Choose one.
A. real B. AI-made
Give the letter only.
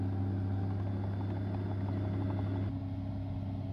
A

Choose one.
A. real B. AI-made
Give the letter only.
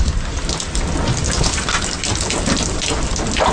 A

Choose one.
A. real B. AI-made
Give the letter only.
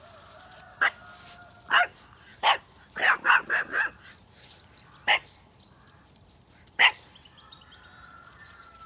A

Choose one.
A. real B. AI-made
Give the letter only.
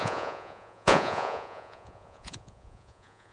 B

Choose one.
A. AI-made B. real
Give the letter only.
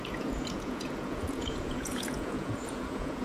A